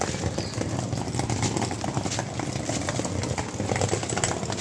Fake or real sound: real